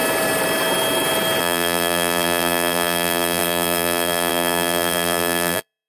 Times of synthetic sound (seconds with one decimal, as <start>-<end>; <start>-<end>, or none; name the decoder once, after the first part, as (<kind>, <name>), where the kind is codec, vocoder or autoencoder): 1.4-5.9 (vocoder, BigVGAN v2)

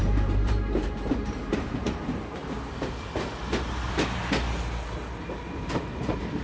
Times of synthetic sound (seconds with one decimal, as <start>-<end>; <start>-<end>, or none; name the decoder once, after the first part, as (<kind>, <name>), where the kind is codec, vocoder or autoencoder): 0.0-2.4 (vocoder, BigVGAN v2); 5.7-6.4